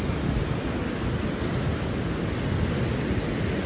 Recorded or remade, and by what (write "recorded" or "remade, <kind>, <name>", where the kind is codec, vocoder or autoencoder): recorded